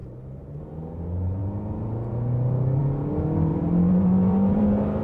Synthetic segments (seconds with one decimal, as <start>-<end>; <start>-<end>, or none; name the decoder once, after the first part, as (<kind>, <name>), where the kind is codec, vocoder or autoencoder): 0.0-0.6 (vocoder, BigVGAN v2); 3.5-5.0